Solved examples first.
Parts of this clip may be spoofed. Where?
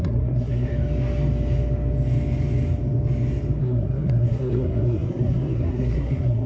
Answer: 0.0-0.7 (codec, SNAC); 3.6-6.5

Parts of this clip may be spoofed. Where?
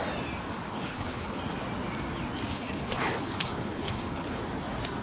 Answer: 0.7-1.4 (codec, HILCodec); 2.5-4.4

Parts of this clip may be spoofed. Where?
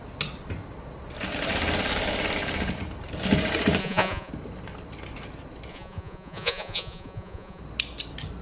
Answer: 3.8-4.3 (vocoder, Vocos); 5.7-7.6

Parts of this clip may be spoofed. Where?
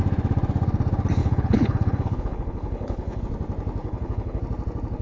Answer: 1.2-3.2 (codec, HILCodec); 3.8-4.4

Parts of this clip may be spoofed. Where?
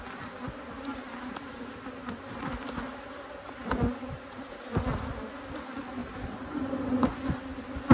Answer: 4.0-4.5 (vocoder, BigVGAN v2); 6.0-6.7